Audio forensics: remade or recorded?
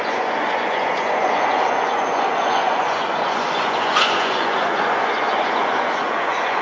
remade